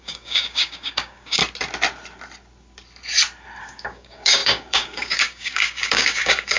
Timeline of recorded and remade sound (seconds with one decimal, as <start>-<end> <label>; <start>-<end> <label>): 0.0-1.4 remade; 1.4-3.6 recorded; 3.6-6.6 remade